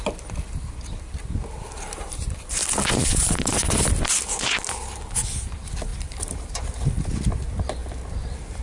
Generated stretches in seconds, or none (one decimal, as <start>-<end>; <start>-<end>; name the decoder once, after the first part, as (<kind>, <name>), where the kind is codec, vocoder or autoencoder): 2.6-3.9 (vocoder, BigVGAN v2); 5.9-6.6